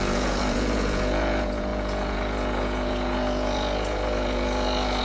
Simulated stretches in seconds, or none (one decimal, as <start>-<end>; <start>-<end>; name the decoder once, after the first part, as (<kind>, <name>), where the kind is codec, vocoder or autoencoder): 0.0-5.0 (vocoder, Vocos)